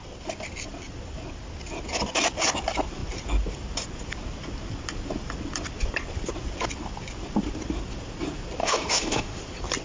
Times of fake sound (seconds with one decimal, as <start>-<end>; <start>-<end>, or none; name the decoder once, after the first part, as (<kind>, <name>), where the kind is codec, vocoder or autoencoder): 8.6-9.4 (autoencoder, DAC-VAE)